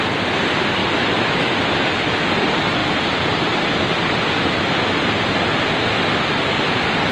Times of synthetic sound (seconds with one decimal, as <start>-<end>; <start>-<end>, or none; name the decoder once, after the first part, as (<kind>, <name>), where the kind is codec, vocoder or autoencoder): 0.8-1.7 (autoencoder, DAC-VAE)

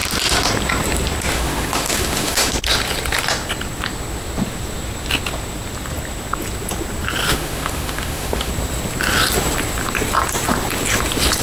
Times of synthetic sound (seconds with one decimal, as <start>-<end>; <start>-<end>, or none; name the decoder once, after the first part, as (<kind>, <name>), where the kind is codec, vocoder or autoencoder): 1.3-2.5 (autoencoder, DAC-VAE); 7.3-8.5